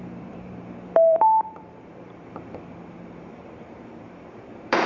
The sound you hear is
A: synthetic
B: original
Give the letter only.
A